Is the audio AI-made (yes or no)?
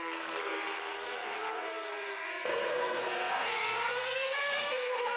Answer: yes